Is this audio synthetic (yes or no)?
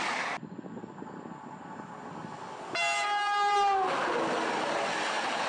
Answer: no